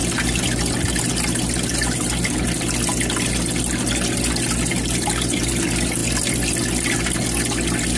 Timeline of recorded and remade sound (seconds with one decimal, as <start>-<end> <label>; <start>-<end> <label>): 0.0-8.0 recorded